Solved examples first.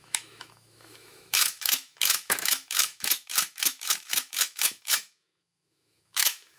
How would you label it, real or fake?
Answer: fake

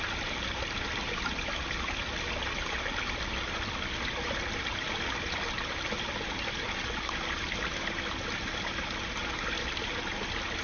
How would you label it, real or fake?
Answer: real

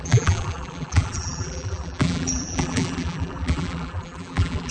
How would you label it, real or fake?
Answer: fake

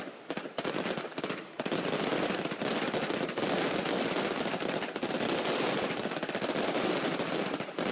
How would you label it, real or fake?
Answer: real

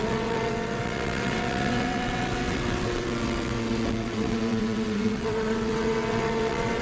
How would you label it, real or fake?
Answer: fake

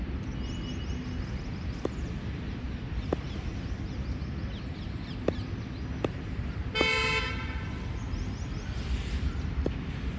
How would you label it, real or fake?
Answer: real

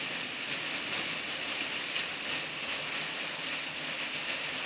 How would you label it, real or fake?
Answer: real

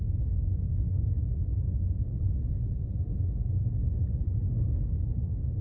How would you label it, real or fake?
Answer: real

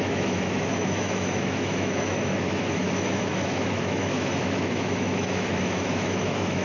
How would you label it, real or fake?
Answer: fake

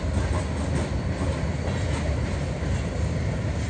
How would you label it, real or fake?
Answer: real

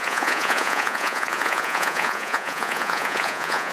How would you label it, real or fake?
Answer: fake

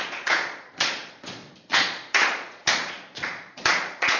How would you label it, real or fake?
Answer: fake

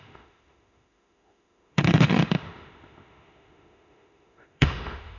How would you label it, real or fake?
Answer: fake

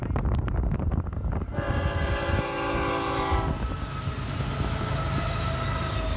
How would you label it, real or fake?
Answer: real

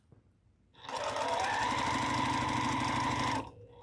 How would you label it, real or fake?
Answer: real